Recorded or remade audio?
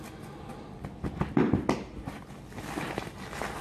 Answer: remade